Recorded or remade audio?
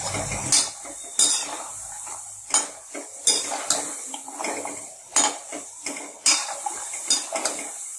recorded